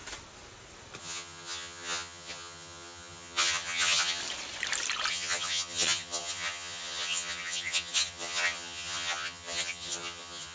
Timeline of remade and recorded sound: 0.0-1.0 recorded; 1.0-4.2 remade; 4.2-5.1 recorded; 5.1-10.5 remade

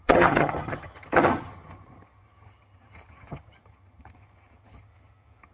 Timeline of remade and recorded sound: 0.0-5.5 remade